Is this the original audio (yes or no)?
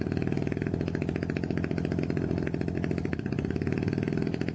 yes